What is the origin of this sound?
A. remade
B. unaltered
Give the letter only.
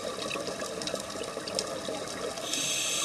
B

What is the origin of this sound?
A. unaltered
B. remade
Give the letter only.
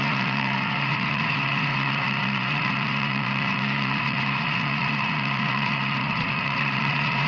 B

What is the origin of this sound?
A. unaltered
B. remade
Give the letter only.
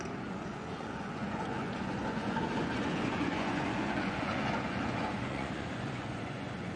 B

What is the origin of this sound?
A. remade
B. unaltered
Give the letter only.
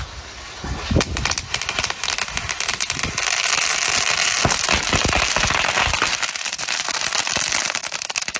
B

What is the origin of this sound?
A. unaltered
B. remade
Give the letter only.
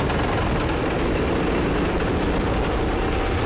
A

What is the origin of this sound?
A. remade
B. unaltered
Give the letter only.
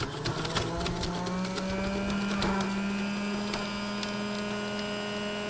B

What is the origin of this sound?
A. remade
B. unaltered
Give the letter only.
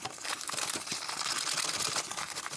B